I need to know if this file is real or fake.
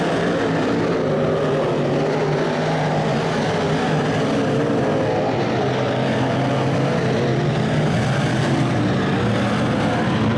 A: real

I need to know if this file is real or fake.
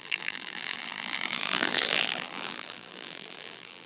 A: fake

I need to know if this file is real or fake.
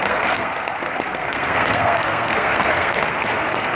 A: fake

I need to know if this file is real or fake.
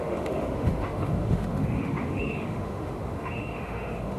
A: fake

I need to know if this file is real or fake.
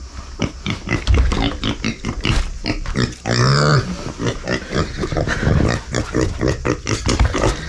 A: real